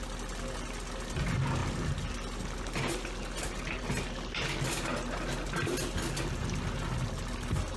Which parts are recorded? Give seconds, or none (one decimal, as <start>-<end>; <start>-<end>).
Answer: 0.0-7.8